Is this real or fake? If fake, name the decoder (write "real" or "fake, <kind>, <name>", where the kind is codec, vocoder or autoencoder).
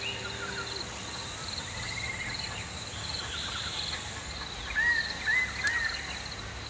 real